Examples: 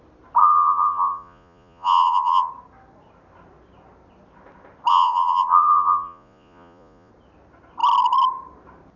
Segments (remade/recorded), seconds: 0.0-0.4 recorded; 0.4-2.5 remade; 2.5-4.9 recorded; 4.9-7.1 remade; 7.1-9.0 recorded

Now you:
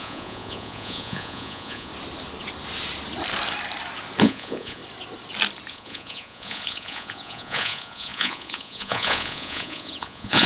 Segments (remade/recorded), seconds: 0.0-1.9 remade; 1.9-4.2 recorded; 4.2-4.8 remade; 4.8-5.7 recorded; 5.7-10.5 remade

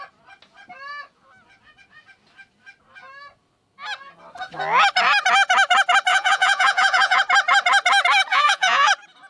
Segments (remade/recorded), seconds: 0.0-6.1 recorded; 6.1-7.2 remade; 7.2-8.3 recorded; 8.3-8.9 remade; 8.9-9.3 recorded

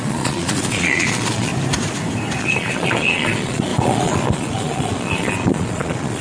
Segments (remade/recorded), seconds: 0.0-1.5 remade; 1.5-2.4 recorded; 2.4-6.2 remade

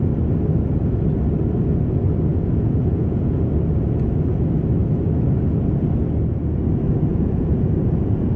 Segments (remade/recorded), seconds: 0.0-2.3 recorded; 2.3-3.5 remade; 3.5-7.1 recorded; 7.1-8.4 remade

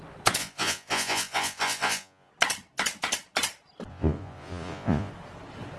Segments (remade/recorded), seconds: 0.0-0.4 recorded; 0.4-2.3 remade; 2.3-3.9 recorded; 3.9-5.1 remade; 5.1-5.8 recorded